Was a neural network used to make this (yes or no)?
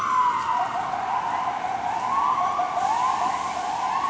no